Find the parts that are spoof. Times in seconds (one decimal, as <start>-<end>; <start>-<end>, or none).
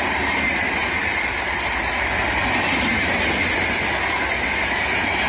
none